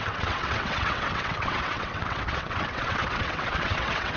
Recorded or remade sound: remade